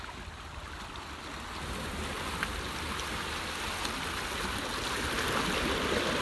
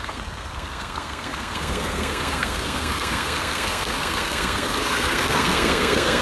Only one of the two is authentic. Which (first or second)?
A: first